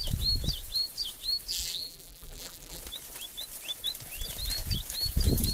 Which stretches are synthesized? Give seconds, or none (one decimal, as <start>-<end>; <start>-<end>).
1.5-2.8